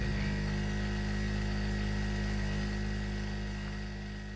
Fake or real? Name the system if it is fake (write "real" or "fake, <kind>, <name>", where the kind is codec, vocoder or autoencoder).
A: real